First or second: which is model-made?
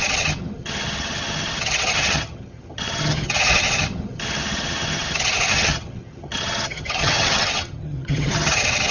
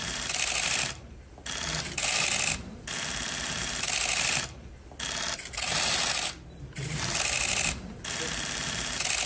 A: first